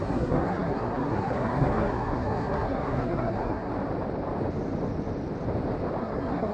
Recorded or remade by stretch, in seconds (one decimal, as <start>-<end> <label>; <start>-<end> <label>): 0.0-3.7 remade; 3.7-6.0 recorded; 6.0-6.5 remade